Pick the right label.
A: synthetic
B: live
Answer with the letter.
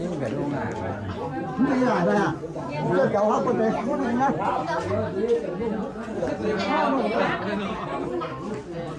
B